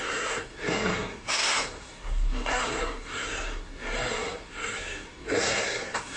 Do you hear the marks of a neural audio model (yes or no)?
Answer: yes